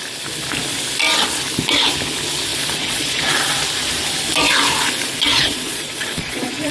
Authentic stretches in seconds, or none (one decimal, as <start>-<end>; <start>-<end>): 0.0-2.5; 3.3-5.3